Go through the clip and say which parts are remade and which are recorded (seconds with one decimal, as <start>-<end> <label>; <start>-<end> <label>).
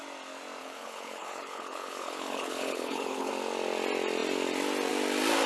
0.0-0.6 recorded; 0.6-3.3 remade; 3.3-5.5 recorded